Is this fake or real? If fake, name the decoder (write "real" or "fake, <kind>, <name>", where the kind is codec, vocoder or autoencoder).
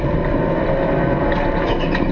real